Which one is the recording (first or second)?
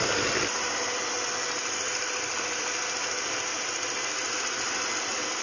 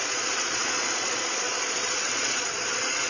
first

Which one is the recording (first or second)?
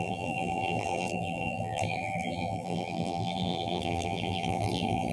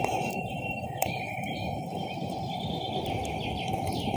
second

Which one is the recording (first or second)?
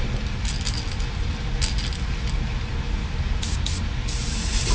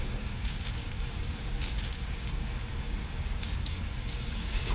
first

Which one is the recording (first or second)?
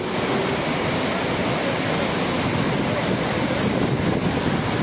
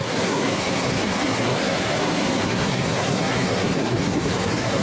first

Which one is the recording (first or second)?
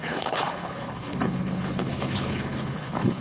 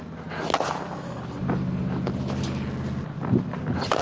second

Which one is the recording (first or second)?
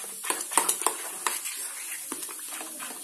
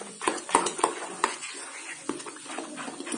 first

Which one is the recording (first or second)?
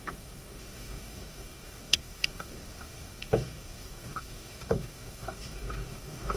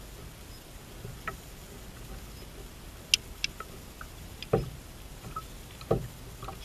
second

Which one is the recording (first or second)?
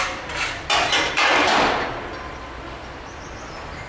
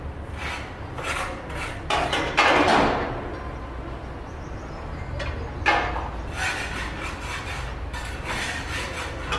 second